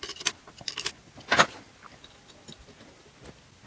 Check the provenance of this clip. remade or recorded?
recorded